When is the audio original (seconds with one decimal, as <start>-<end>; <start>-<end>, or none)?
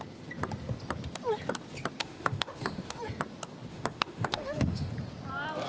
0.0-2.0; 3.0-3.7; 4.9-5.7